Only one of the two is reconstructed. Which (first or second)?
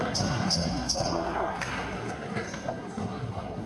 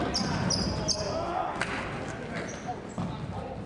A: first